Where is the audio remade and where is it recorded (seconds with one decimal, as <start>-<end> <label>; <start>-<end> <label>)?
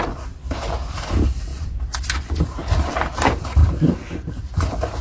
0.0-5.0 recorded